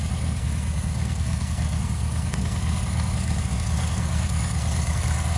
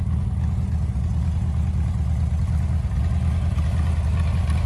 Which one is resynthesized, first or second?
first